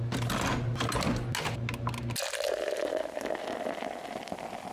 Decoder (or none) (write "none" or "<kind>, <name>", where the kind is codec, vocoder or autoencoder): none